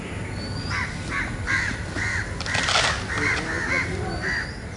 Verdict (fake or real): real